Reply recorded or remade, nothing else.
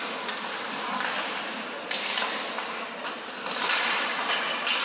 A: recorded